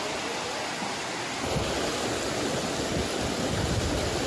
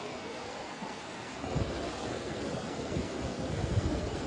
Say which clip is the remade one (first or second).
second